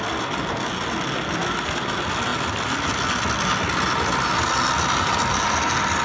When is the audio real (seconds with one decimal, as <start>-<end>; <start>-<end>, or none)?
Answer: 0.0-6.0